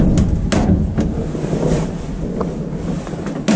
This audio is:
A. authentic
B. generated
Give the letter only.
A